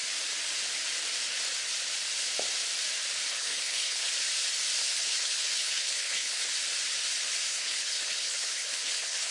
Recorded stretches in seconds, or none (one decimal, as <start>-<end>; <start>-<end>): 0.0-3.3; 4.1-4.9; 6.5-7.5